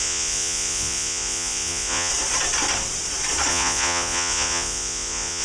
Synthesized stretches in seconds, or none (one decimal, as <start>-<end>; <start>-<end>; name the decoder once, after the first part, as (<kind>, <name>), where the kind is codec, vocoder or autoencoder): 0.0-2.1 (vocoder, Vocos); 3.5-5.4